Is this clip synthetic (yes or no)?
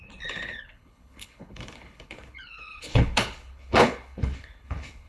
yes